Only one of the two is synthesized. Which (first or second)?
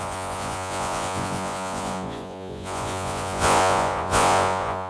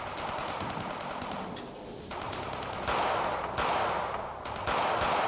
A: first